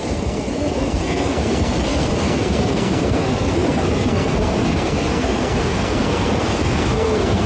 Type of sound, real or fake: fake